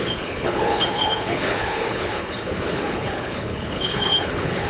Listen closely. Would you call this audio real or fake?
fake